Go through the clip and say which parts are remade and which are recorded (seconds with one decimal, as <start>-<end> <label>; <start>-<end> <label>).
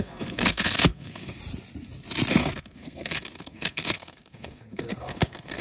0.0-1.4 remade; 1.4-2.3 recorded; 2.3-5.6 remade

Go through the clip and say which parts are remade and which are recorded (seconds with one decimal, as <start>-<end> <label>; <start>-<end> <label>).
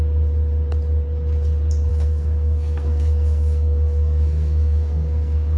0.0-1.9 recorded; 1.9-5.6 remade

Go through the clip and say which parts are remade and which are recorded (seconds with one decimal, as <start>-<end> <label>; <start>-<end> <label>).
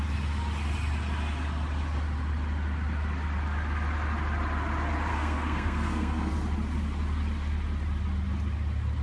0.0-5.1 recorded; 5.1-6.3 remade; 6.3-9.0 recorded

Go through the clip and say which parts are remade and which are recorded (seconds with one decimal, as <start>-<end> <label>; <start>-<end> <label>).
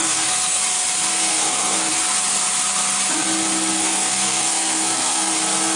0.0-0.6 remade; 0.6-1.1 recorded; 1.1-1.9 remade; 1.9-3.8 recorded; 3.8-5.3 remade; 5.3-5.8 recorded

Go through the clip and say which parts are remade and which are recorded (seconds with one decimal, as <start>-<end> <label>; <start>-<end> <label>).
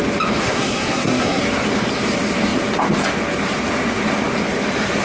0.0-0.4 recorded; 0.4-1.4 remade; 1.4-5.0 recorded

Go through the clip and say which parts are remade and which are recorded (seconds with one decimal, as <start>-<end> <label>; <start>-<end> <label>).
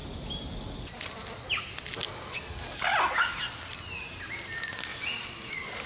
0.0-5.9 recorded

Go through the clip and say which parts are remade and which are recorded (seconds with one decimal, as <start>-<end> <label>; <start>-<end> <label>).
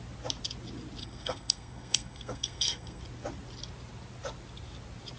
0.0-1.0 recorded; 1.0-3.0 remade; 3.0-5.2 recorded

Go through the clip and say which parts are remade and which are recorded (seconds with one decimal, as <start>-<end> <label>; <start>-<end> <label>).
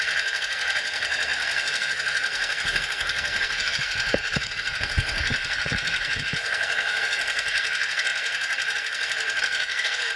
0.0-10.2 remade